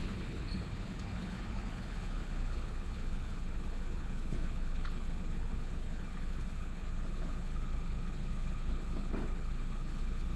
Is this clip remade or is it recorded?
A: remade